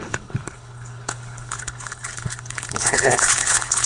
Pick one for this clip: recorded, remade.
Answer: remade